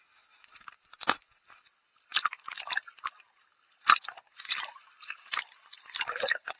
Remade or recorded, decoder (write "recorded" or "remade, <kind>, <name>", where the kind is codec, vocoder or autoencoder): remade, vocoder, BigVGAN v2